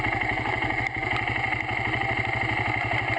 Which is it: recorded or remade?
recorded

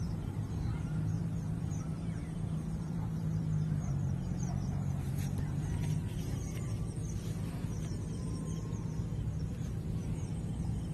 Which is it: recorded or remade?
remade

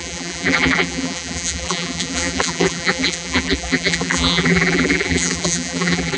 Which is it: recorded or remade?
remade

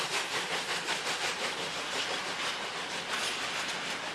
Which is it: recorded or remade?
recorded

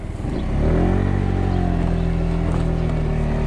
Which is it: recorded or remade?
recorded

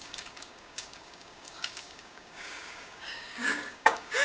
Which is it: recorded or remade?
remade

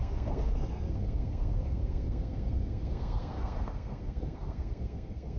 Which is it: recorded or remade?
remade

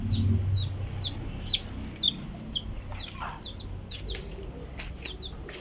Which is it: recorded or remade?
recorded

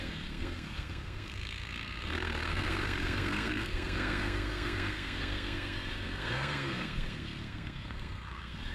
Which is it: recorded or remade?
remade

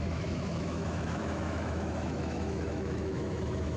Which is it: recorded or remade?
remade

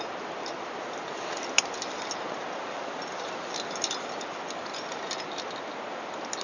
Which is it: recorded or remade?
recorded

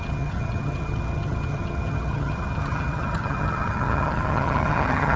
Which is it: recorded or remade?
remade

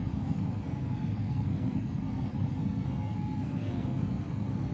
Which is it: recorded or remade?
remade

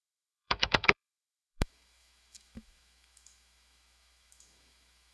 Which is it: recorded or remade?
remade